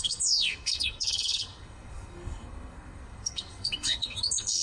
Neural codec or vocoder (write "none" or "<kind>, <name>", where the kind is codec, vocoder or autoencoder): codec, SNAC